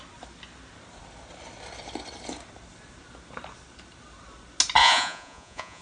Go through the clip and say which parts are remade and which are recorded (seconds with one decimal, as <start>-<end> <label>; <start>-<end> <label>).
0.0-4.8 recorded; 4.8-5.8 remade